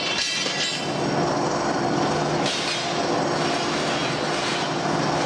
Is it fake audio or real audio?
real